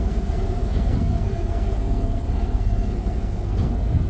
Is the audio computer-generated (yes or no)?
yes